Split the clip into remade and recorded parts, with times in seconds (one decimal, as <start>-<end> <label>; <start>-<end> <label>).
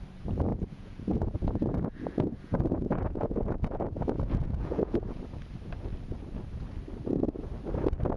0.0-0.5 recorded; 0.5-5.2 remade; 5.2-8.2 recorded